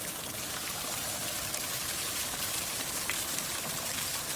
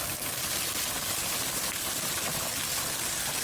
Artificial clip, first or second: first